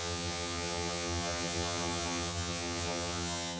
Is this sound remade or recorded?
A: remade